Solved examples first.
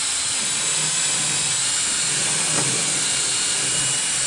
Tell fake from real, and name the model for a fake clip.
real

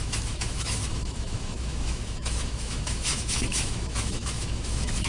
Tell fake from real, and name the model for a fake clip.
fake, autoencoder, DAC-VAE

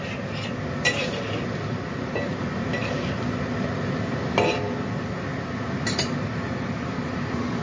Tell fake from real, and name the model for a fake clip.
real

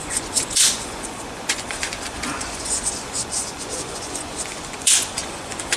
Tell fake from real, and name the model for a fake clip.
fake, vocoder, Vocos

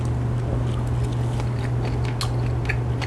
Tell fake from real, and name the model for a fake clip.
real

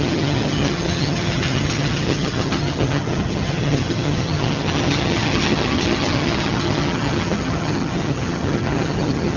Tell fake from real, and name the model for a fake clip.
fake, vocoder, HiFi-GAN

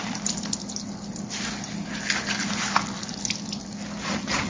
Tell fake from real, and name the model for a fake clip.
real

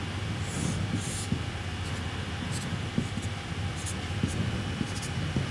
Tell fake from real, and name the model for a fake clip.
real